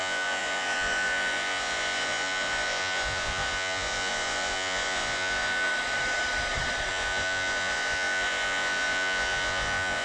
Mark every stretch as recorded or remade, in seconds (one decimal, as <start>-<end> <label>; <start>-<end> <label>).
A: 0.0-5.7 remade; 5.7-6.9 recorded; 6.9-10.0 remade